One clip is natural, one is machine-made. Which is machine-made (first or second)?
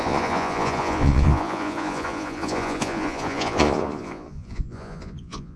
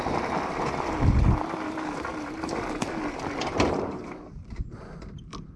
first